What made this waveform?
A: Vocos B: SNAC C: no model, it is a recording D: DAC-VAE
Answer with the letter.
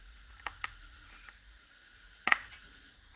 A